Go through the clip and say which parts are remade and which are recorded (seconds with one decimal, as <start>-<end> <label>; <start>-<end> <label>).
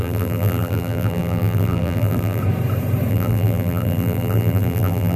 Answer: 0.0-2.4 remade; 2.4-3.1 recorded; 3.1-5.2 remade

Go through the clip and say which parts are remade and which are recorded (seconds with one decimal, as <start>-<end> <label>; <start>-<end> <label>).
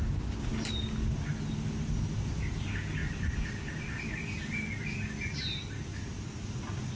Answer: 0.0-7.0 recorded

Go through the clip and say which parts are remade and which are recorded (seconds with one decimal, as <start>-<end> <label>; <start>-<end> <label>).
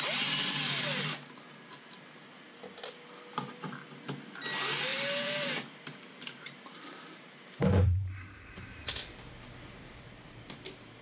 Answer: 0.0-4.9 recorded; 4.9-8.9 remade; 8.9-11.0 recorded